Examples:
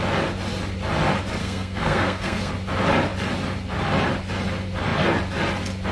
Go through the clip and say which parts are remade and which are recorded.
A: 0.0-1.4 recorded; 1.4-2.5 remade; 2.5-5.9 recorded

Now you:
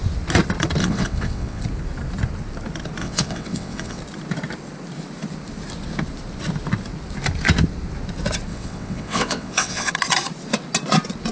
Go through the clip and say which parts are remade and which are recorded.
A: 0.0-0.8 recorded; 0.8-1.6 remade; 1.6-3.0 recorded; 3.0-4.0 remade; 4.0-8.5 recorded; 8.5-9.9 remade; 9.9-11.3 recorded

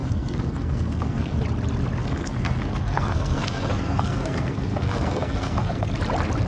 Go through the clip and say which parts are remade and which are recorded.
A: 0.0-1.4 remade; 1.4-2.0 recorded; 2.0-5.9 remade; 5.9-6.5 recorded

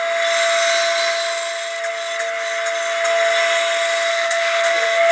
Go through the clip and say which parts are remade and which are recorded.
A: 0.0-4.1 recorded; 4.1-5.1 remade

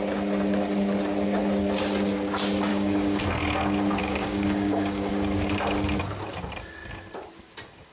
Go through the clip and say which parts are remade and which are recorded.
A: 0.0-2.7 recorded; 2.7-3.2 remade; 3.2-4.0 recorded; 4.0-5.1 remade; 5.1-7.9 recorded

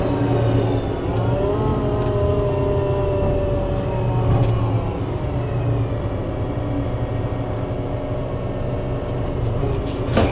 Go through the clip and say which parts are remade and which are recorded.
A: 0.0-10.3 recorded

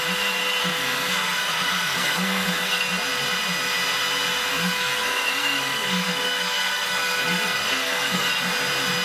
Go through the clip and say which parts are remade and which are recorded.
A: 0.0-0.6 recorded; 0.6-2.9 remade; 2.9-4.5 recorded; 4.5-8.3 remade; 8.3-9.0 recorded

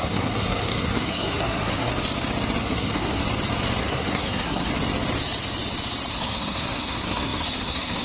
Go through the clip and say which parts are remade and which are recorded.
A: 0.0-1.9 remade; 1.9-2.6 recorded; 2.6-3.2 remade; 3.2-3.8 recorded; 3.8-4.7 remade; 4.7-6.1 recorded; 6.1-8.0 remade